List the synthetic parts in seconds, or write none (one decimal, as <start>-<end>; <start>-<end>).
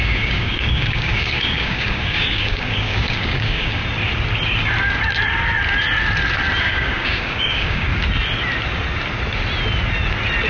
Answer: 0.0-3.8; 6.6-7.9